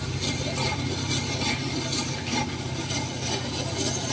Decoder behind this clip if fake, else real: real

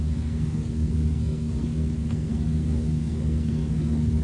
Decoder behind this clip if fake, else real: fake, codec, SNAC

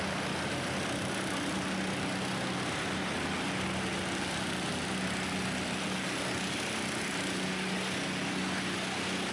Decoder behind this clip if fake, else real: real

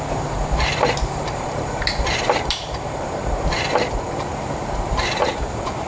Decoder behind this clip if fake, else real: fake, vocoder, BigVGAN v2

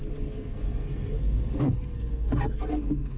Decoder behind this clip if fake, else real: fake, codec, SNAC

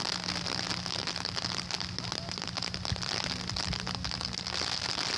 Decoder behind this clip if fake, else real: real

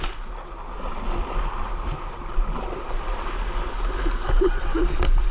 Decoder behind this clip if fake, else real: real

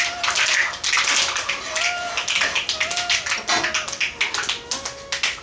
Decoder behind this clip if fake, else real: real